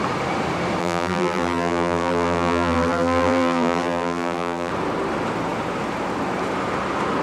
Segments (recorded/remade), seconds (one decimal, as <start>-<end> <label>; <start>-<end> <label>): 0.0-0.8 recorded; 0.8-4.7 remade; 4.7-7.2 recorded